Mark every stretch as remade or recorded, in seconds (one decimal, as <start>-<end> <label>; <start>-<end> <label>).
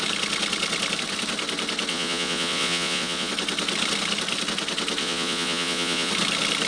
0.0-1.9 recorded; 1.9-3.3 remade; 3.3-5.0 recorded; 5.0-6.1 remade; 6.1-6.7 recorded